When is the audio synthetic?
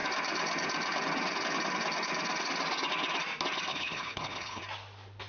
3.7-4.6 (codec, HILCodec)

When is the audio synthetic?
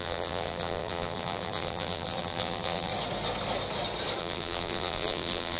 0.0-2.9 (vocoder, BigVGAN v2); 4.2-5.6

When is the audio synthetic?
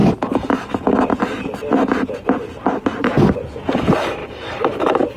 4.2-5.2 (vocoder, BigVGAN v2)